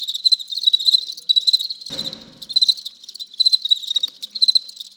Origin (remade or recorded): recorded